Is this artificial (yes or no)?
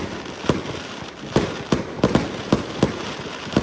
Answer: yes